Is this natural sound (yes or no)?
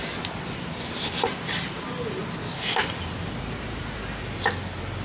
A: yes